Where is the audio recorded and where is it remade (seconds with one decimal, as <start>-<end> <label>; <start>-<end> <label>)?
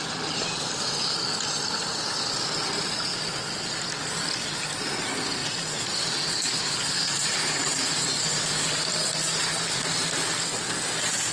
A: 0.0-5.4 recorded; 5.4-9.8 remade; 9.8-11.3 recorded